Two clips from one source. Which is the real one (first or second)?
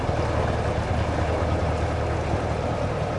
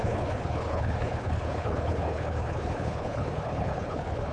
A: first